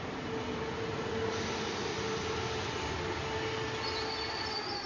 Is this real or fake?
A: real